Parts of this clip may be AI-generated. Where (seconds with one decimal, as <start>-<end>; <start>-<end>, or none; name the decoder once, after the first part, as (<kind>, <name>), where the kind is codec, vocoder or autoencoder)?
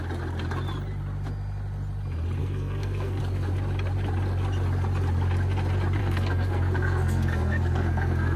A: 2.4-3.2 (codec, SNAC); 6.0-8.4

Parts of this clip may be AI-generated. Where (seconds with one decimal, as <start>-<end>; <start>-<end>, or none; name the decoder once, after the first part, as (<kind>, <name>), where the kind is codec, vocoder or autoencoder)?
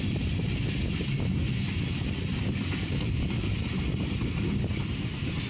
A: 1.6-3.3 (vocoder, BigVGAN v2)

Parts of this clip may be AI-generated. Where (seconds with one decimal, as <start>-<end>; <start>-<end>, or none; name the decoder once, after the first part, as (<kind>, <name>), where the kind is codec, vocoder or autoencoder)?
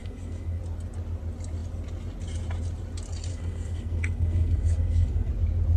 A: 0.0-0.6 (codec, SNAC); 3.3-5.3